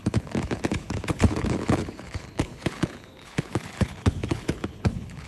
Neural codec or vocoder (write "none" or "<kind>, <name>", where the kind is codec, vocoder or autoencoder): codec, HILCodec